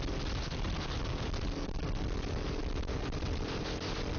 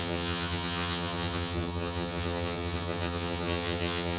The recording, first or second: first